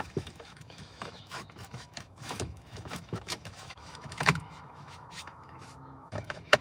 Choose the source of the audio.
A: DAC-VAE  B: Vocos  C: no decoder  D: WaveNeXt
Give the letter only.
A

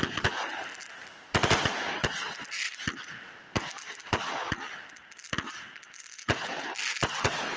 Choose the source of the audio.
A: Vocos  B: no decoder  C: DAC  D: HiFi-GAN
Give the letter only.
B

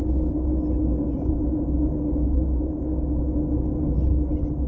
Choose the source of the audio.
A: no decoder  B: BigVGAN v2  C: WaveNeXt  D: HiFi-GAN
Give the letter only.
A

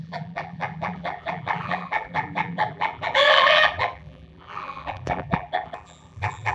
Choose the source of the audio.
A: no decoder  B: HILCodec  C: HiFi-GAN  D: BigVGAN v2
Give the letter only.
D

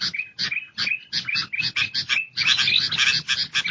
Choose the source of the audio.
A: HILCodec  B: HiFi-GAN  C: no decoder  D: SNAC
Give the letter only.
C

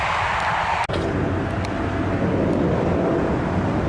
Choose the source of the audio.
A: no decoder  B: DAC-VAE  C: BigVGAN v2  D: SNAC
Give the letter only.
A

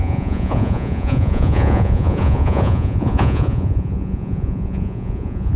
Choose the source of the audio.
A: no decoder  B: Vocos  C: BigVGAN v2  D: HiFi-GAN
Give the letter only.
B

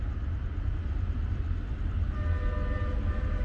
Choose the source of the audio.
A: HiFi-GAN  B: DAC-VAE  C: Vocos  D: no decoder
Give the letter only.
D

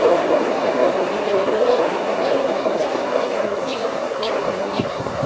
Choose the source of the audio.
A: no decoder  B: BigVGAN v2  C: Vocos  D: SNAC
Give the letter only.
D